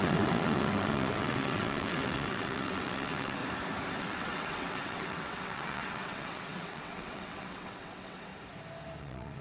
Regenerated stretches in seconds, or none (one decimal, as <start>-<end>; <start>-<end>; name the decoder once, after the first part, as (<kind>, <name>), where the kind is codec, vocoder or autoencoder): 0.0-3.4 (vocoder, WaveNeXt); 4.0-8.3; 9.0-9.4